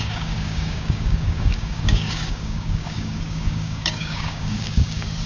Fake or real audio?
fake